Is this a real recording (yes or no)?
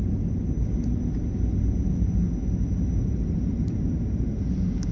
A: yes